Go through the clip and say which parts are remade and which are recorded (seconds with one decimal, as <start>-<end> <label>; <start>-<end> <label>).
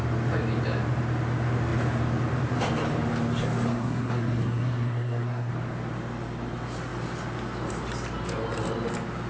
0.0-3.7 recorded; 3.7-5.5 remade; 5.5-9.3 recorded